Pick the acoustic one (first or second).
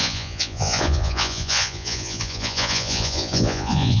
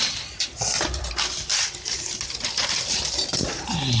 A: second